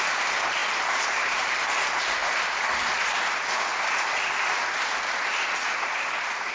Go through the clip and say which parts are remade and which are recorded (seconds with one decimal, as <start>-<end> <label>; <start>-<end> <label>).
0.0-0.6 recorded; 0.6-1.5 remade; 1.5-6.5 recorded